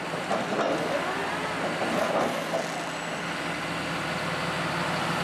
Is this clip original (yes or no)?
yes